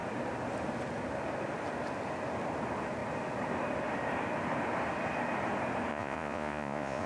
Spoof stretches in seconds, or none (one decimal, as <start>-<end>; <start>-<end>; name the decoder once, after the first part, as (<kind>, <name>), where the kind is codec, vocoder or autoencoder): 5.9-7.1 (vocoder, Vocos)